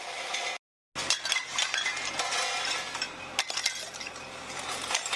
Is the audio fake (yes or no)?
no